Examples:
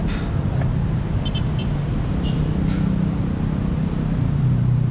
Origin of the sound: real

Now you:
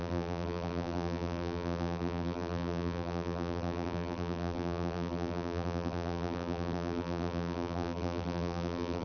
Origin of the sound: fake